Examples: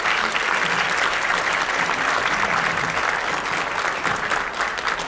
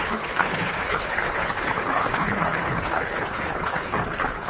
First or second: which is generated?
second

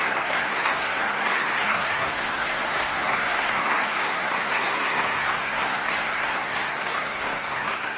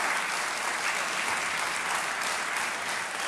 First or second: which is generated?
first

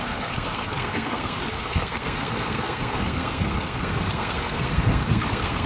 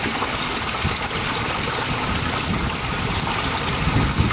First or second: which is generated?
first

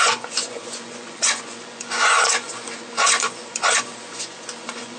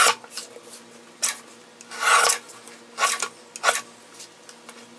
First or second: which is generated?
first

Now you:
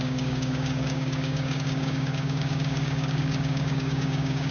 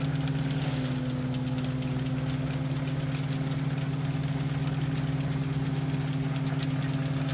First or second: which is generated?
first